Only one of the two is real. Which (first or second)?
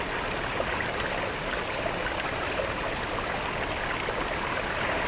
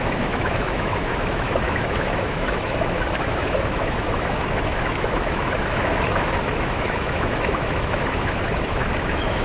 first